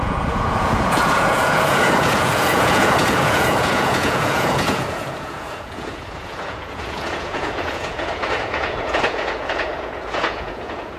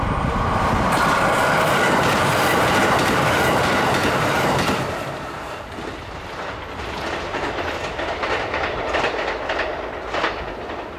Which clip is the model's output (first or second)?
first